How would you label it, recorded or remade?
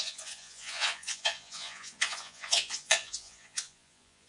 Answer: remade